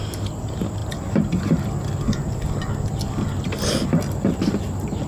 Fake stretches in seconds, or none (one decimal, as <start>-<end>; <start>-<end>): none